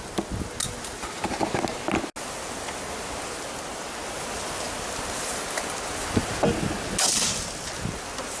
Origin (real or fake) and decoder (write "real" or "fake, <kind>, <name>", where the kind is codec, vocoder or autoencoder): real